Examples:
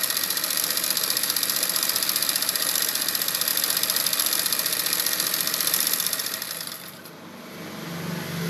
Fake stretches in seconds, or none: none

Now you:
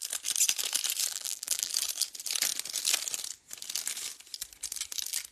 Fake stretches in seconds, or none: 1.1-1.7 (vocoder, BigVGAN v2)

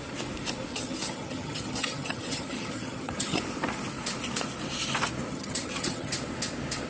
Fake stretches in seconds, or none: 0.7-3.4 (vocoder, HiFi-GAN); 5.3-6.1

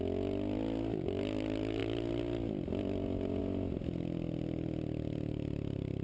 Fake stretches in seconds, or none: none

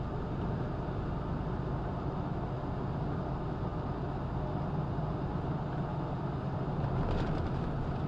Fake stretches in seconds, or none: none